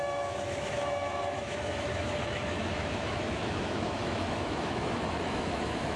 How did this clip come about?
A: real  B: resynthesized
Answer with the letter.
B